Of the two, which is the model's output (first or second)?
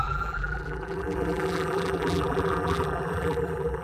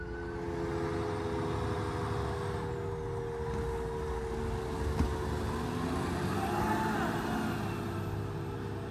first